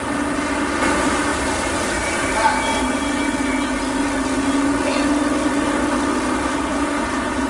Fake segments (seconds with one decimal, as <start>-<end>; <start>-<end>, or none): 6.7-7.5